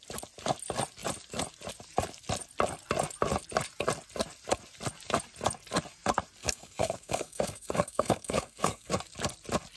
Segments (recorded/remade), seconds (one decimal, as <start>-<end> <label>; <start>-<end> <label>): 0.0-6.4 recorded; 6.4-8.9 remade; 8.9-9.8 recorded